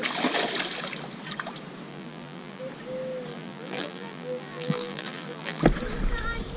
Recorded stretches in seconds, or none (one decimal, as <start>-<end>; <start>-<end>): 0.0-1.9; 2.6-3.3; 5.6-6.6